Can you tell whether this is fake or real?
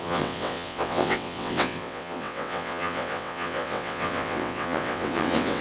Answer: fake